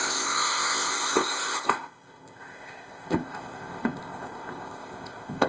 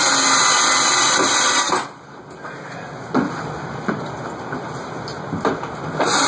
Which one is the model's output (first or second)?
first